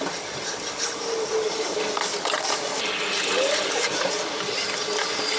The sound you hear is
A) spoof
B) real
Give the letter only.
B